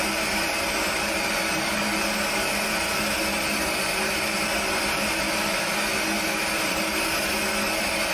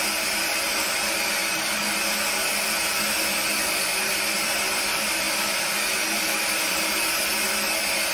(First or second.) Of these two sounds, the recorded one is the second